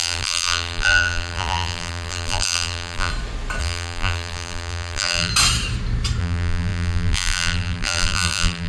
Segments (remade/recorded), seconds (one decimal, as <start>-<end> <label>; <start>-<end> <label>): 0.0-3.1 remade; 3.1-3.6 recorded; 3.6-5.3 remade; 5.3-6.2 recorded; 6.2-8.7 remade